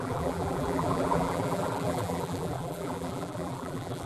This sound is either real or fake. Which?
fake